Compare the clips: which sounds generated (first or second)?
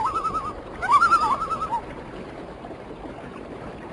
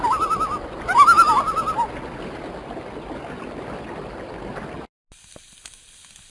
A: first